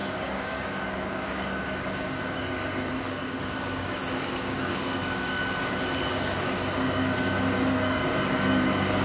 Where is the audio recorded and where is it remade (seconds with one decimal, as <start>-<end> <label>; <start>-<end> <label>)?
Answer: 0.0-5.4 remade; 5.4-6.1 recorded; 6.1-9.0 remade